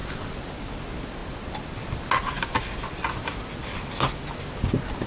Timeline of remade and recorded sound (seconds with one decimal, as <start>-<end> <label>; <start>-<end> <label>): 0.0-5.1 recorded